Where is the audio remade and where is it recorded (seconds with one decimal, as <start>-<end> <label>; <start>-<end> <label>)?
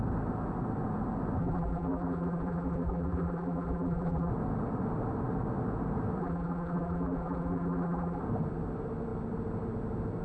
0.0-1.4 recorded; 1.4-4.3 remade; 4.3-6.2 recorded; 6.2-8.2 remade; 8.2-10.2 recorded